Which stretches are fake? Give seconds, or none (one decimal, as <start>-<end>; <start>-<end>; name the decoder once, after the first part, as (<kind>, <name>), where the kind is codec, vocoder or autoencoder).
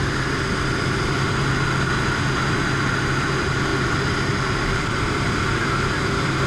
none